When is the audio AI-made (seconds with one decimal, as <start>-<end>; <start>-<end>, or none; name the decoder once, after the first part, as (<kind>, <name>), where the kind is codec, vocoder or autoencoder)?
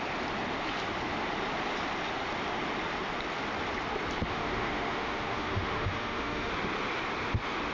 4.3-6.5 (autoencoder, DAC-VAE)